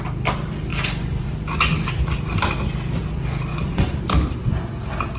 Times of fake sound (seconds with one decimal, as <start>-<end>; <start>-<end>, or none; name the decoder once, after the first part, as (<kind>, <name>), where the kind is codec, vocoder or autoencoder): 0.7-1.3 (vocoder, Vocos); 3.5-4.0